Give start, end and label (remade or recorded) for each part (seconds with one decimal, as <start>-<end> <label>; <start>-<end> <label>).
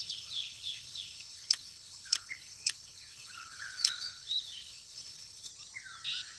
0.0-5.5 remade; 5.5-6.4 recorded